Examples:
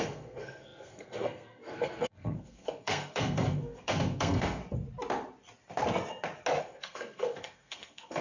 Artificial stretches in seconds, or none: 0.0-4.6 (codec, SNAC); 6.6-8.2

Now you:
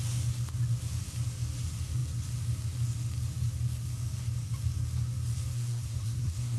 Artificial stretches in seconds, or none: 5.5-6.6 (codec, SNAC)

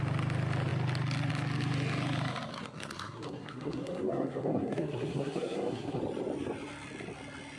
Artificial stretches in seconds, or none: 2.5-6.0 (codec, SNAC)